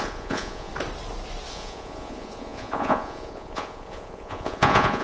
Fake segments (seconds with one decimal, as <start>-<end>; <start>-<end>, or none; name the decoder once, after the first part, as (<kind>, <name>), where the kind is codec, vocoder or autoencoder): 0.0-0.7 (vocoder, Vocos); 1.5-5.0